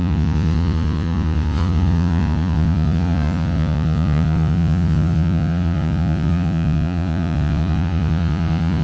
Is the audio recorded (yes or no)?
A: no